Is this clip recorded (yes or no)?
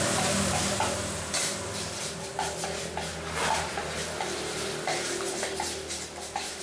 yes